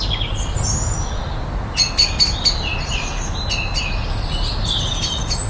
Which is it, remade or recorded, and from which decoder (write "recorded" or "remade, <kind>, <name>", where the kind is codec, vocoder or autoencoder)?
recorded